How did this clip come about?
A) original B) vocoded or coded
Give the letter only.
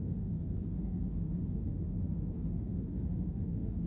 B